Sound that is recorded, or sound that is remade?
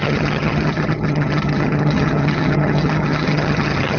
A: remade